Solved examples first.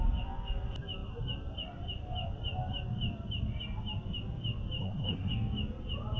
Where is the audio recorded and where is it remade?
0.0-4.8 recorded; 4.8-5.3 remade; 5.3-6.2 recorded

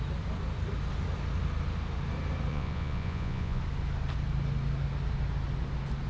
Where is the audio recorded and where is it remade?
0.0-2.5 recorded; 2.5-3.6 remade; 3.6-6.1 recorded

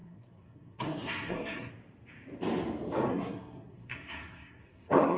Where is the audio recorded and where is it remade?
0.0-1.7 remade; 1.7-3.1 recorded; 3.1-5.2 remade

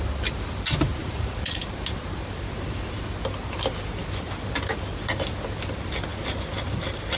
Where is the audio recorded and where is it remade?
0.0-1.0 recorded; 1.0-1.6 remade; 1.6-7.2 recorded

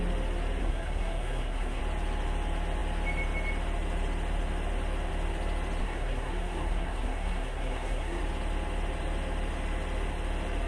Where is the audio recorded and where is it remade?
0.0-0.6 recorded; 0.6-1.8 remade; 1.8-5.8 recorded; 5.8-8.2 remade; 8.2-10.7 recorded